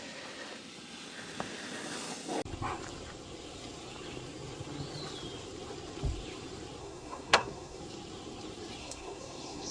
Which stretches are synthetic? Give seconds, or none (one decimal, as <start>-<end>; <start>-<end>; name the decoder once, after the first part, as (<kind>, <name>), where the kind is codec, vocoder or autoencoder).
6.8-7.8 (codec, SNAC); 8.8-9.7